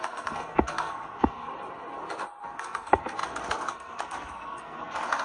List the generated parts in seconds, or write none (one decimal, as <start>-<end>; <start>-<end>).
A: 0.0-1.5; 2.4-5.2